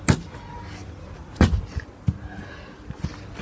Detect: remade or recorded recorded